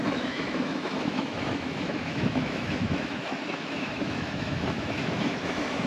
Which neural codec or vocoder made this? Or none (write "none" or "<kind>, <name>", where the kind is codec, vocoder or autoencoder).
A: autoencoder, DAC-VAE